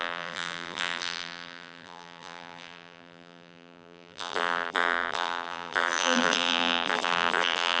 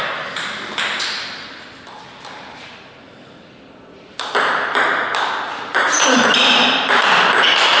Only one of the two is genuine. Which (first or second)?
second